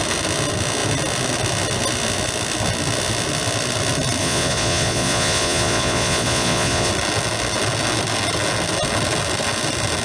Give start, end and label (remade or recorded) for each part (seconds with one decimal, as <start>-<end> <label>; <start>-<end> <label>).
0.0-4.2 recorded; 4.2-6.9 remade; 6.9-10.0 recorded